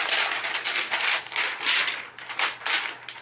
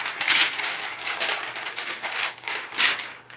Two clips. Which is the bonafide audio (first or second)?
first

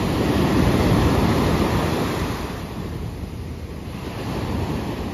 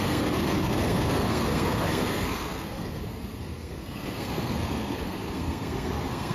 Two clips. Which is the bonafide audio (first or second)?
first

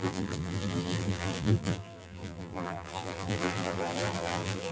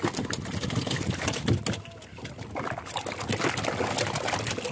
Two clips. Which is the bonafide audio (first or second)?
second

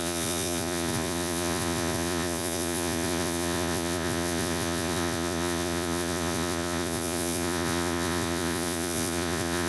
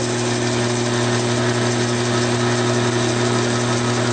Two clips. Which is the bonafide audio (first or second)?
second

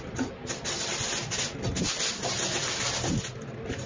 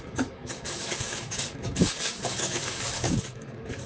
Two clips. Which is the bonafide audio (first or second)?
first